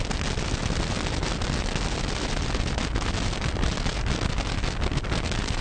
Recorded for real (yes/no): yes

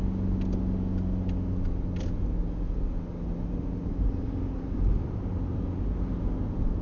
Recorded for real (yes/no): yes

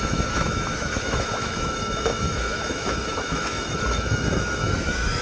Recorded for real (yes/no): no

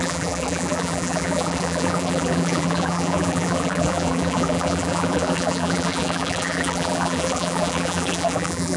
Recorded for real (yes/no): no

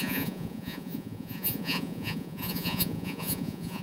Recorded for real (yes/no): no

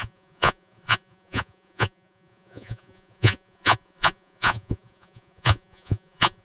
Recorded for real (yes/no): no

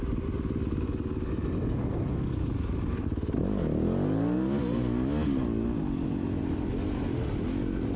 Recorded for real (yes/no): yes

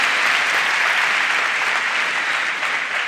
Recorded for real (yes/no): no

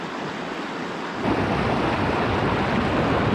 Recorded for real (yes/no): yes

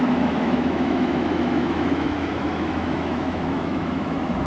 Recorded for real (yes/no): no